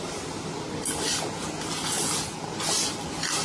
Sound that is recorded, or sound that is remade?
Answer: recorded